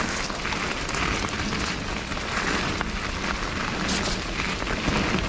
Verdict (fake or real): real